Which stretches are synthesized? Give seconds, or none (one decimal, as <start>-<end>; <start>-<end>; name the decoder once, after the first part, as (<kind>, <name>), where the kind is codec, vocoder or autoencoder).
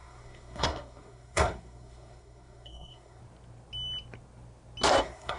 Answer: 0.0-3.2 (codec, SNAC); 5.0-5.4